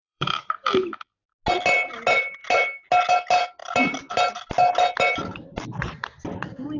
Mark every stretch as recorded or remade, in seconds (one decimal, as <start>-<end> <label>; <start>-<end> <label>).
0.0-1.0 remade; 1.0-6.8 recorded